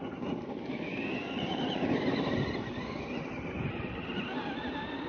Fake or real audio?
real